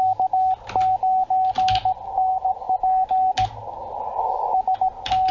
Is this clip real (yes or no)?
yes